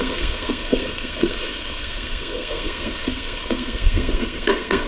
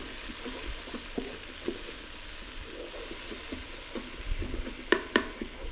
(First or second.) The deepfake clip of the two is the first